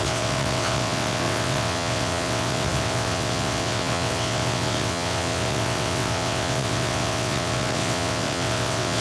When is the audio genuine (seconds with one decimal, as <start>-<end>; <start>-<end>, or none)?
none